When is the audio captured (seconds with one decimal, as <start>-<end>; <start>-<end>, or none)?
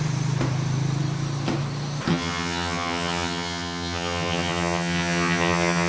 0.0-2.1